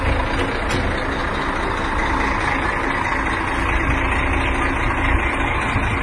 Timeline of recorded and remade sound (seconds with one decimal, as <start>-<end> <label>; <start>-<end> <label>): 0.0-6.0 recorded

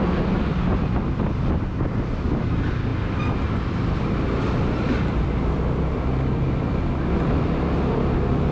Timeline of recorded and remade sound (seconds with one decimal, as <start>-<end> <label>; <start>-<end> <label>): 0.0-8.5 recorded

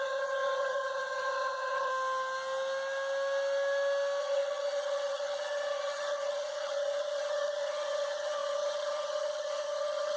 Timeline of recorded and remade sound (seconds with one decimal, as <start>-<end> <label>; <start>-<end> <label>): 0.0-1.9 remade; 1.9-4.2 recorded; 4.2-10.2 remade